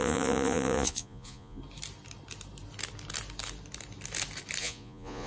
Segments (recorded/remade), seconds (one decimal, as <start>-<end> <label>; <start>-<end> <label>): 0.0-1.6 remade; 1.6-4.6 recorded; 4.6-5.3 remade